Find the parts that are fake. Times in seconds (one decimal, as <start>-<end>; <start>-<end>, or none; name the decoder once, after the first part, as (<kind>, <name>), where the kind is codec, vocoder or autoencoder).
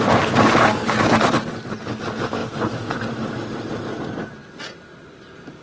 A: none